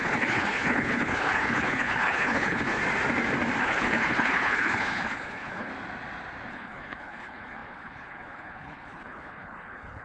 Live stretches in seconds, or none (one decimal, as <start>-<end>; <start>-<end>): 2.8-3.6; 5.7-6.5